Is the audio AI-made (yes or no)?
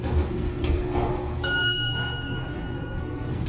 yes